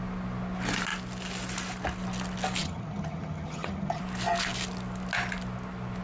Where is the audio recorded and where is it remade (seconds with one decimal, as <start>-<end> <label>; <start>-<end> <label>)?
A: 0.0-2.6 recorded; 2.6-4.0 remade; 4.0-6.0 recorded